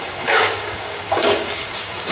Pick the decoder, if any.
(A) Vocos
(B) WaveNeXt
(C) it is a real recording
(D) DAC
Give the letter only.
D